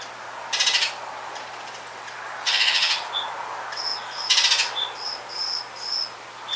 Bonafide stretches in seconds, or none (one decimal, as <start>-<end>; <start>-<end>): 0.0-2.4; 3.1-6.6